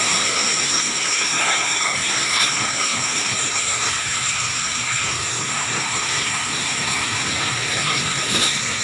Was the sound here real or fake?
fake